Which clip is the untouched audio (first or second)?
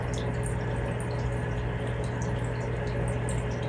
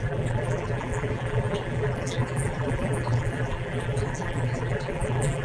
first